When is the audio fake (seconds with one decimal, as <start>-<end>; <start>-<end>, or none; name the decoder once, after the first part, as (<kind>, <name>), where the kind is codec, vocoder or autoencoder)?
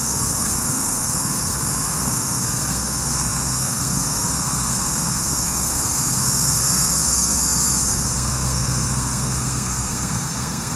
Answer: 0.0-10.8 (codec, SNAC)